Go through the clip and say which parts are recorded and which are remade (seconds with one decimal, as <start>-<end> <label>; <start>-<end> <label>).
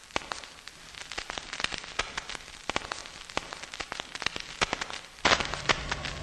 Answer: 0.0-3.0 remade; 3.0-5.4 recorded; 5.4-6.2 remade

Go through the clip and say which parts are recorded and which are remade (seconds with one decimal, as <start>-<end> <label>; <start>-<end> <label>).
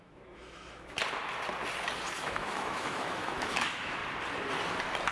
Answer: 0.0-1.0 remade; 1.0-2.2 recorded; 2.2-4.0 remade; 4.0-5.1 recorded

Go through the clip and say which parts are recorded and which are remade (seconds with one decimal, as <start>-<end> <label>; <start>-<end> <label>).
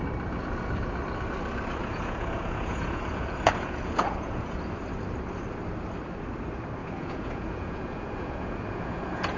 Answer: 0.0-1.8 recorded; 1.8-4.7 remade; 4.7-6.8 recorded; 6.8-9.4 remade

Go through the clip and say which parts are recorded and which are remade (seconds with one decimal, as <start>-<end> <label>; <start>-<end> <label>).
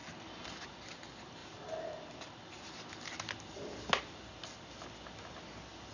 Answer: 0.0-5.9 recorded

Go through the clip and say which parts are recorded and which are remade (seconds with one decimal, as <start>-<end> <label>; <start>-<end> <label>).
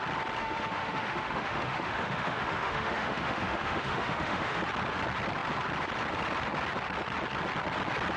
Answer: 0.0-0.4 recorded; 0.4-4.6 remade; 4.6-8.2 recorded